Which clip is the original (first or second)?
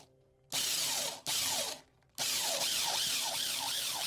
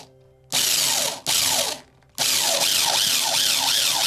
second